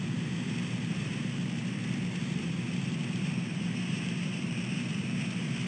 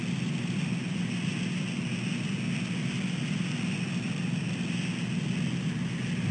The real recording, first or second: second